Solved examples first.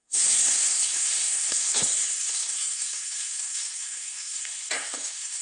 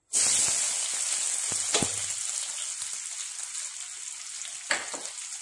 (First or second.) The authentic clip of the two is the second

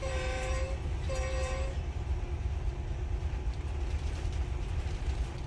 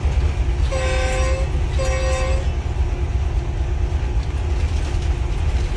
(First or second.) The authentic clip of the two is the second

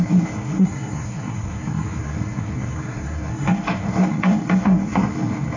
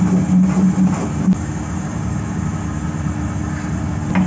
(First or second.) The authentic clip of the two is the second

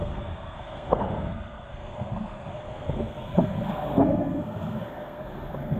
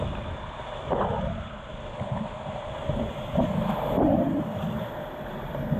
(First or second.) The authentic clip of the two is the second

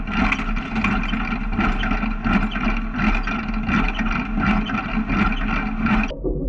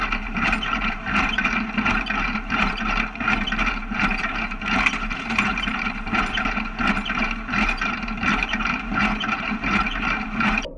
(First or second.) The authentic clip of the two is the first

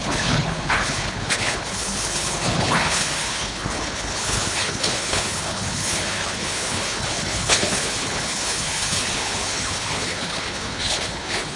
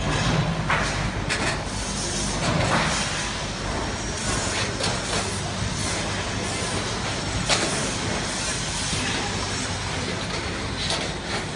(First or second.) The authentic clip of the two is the second